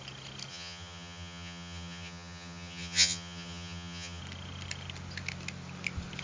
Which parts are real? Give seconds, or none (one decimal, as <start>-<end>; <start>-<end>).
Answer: 0.0-0.5; 4.2-6.2